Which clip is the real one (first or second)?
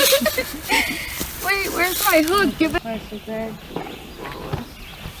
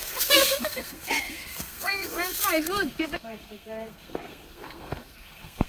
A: first